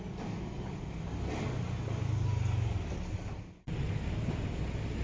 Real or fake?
real